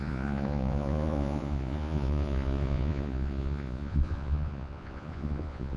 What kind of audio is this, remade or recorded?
remade